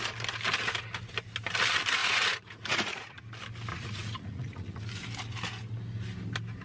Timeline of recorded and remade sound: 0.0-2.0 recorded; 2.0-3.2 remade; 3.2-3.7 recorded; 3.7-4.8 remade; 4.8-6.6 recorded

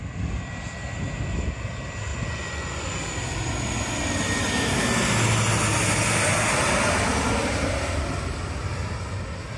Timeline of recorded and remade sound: 0.0-2.1 recorded; 2.1-3.0 remade; 3.0-9.6 recorded

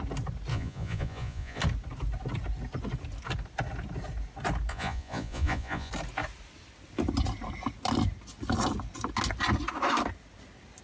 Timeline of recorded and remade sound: 0.0-0.5 recorded; 0.5-1.6 remade; 1.6-4.7 recorded; 4.7-5.9 remade; 5.9-10.8 recorded

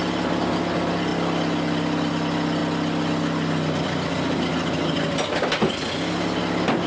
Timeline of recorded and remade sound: 0.0-6.9 recorded